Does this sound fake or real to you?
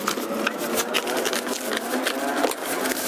real